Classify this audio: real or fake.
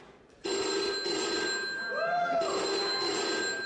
real